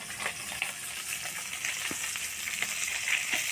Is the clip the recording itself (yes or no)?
yes